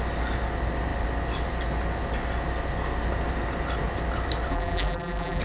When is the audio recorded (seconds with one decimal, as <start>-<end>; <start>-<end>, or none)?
0.0-4.5